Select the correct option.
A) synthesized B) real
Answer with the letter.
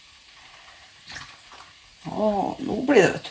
A